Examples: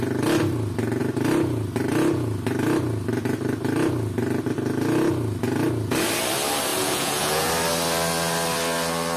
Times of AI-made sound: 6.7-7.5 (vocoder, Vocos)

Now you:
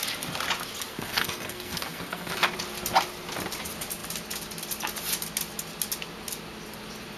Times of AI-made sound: 0.9-2.5 (codec, SNAC)

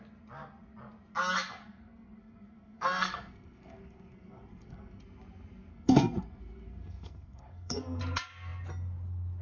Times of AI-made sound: 1.6-5.0 (codec, SNAC); 5.7-8.0

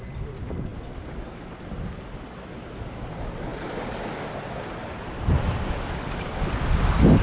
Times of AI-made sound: 4.8-5.7 (vocoder, BigVGAN v2)